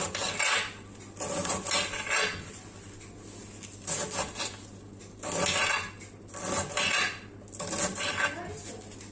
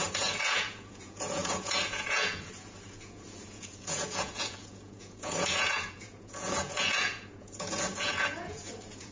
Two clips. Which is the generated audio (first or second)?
second